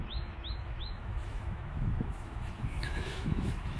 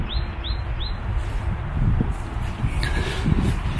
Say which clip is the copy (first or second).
first